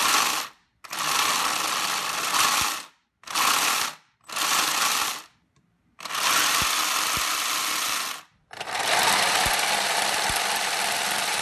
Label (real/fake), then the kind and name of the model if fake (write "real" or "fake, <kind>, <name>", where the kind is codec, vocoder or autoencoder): real